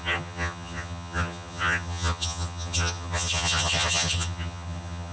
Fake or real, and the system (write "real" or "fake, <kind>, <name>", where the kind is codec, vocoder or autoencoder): fake, vocoder, HiFi-GAN